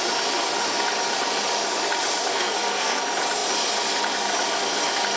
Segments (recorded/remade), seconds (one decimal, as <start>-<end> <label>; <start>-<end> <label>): 0.0-2.3 recorded; 2.3-3.0 remade; 3.0-5.2 recorded

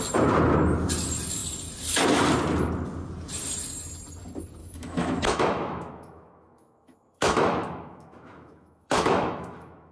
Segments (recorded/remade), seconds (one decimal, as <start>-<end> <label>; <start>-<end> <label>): 0.0-4.6 recorded; 4.6-9.9 remade

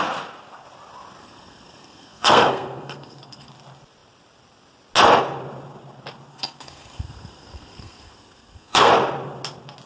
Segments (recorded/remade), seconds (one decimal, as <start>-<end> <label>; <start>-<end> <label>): 0.0-1.2 recorded; 1.2-3.5 remade; 3.5-6.3 recorded; 6.3-8.9 remade; 8.9-9.9 recorded

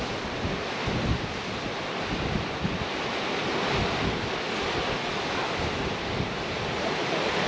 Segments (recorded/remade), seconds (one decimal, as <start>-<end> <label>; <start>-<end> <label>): 0.0-7.5 recorded

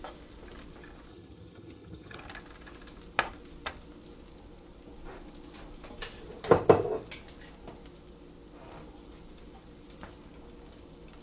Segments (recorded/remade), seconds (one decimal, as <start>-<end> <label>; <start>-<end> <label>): 0.0-1.1 recorded; 1.1-2.2 remade; 2.2-11.2 recorded